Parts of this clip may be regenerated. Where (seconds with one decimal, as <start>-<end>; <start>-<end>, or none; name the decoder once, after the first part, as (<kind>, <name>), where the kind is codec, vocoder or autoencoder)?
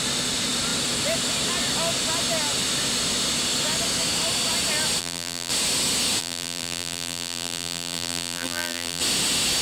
5.0-5.5 (vocoder, BigVGAN v2); 6.2-9.0